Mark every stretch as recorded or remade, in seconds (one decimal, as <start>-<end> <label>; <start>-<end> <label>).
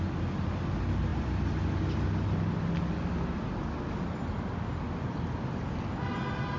0.0-6.6 recorded